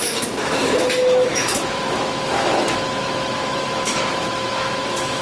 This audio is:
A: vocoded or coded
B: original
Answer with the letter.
A